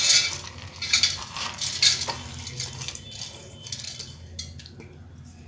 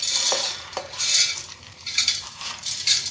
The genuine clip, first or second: first